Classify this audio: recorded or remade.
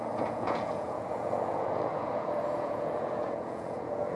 remade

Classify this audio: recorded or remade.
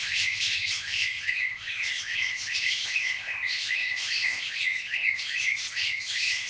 remade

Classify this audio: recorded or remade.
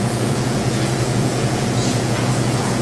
remade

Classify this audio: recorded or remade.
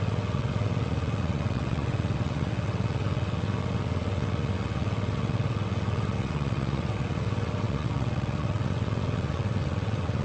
remade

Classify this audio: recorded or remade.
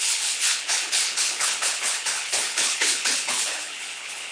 remade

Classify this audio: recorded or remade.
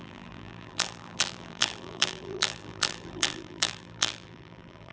remade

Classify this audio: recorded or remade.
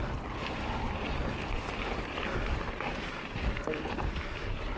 remade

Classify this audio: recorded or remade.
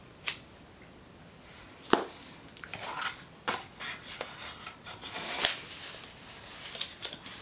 recorded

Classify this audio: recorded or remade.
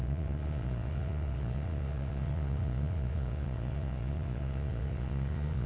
remade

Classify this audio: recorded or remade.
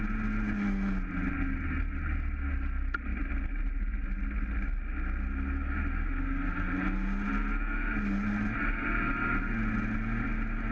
recorded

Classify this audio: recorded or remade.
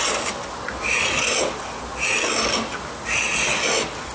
recorded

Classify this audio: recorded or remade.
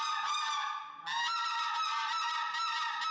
recorded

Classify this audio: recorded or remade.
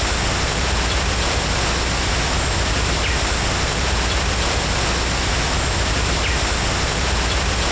recorded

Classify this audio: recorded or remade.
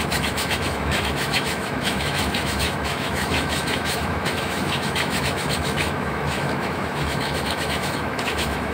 remade